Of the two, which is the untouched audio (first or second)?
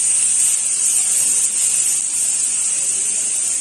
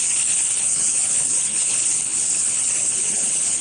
first